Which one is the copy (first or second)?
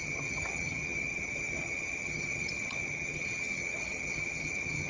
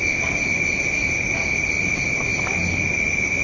first